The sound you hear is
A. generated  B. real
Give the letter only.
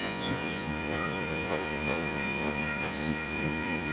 A